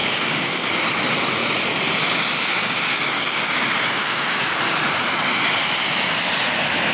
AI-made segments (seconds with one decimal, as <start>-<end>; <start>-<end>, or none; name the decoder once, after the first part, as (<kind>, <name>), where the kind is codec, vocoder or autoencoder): 0.0-0.7 (codec, DAC); 2.6-4.6